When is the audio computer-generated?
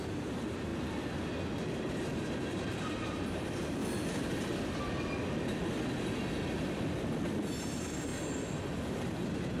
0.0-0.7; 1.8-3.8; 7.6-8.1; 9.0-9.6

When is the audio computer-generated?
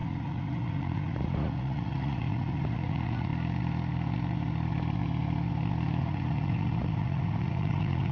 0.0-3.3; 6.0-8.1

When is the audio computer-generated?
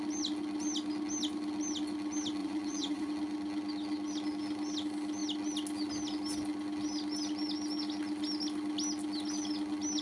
2.4-3.1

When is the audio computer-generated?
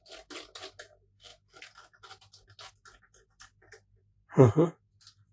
none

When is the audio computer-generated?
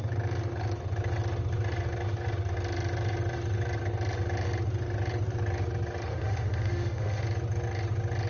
6.1-7.2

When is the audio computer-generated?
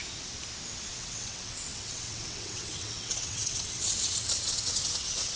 0.9-5.4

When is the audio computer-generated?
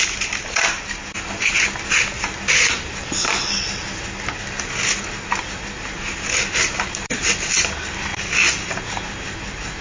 none